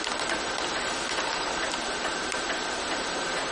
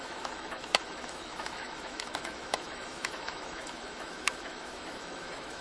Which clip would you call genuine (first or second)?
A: first